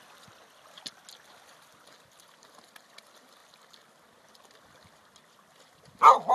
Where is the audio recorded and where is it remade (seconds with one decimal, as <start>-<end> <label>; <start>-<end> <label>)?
0.0-6.3 recorded